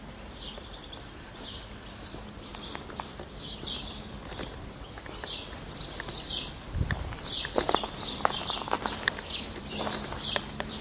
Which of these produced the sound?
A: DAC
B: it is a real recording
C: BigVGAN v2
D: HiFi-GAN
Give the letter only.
C